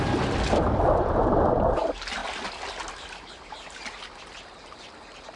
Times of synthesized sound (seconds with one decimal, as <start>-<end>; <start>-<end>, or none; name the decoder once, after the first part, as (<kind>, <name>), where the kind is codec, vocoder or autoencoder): none